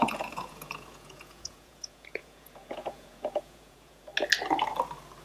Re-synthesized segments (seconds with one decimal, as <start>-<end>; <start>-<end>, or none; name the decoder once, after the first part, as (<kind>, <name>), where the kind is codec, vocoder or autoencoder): 0.0-4.1 (vocoder, Vocos)